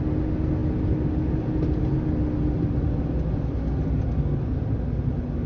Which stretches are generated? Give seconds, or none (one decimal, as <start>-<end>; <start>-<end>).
none